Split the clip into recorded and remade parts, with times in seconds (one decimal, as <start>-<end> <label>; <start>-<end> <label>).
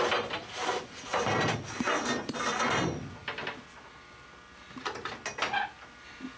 0.0-6.4 recorded